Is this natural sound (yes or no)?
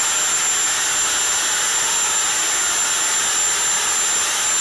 yes